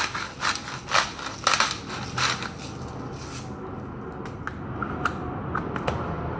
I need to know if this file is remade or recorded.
recorded